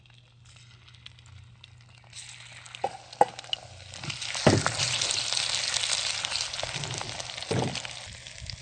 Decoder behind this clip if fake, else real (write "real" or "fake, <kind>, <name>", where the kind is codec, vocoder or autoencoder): real